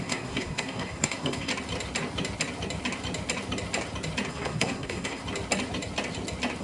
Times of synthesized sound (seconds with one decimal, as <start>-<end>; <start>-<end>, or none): 0.0-1.5; 4.3-5.2